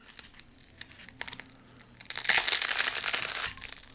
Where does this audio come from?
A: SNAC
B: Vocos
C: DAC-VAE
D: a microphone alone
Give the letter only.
D